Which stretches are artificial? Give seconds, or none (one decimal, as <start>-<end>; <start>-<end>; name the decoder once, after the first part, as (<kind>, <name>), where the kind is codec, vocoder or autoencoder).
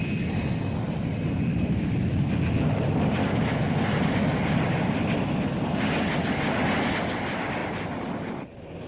1.5-2.3 (autoencoder, DAC-VAE); 3.2-3.7